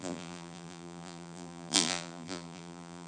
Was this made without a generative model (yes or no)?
no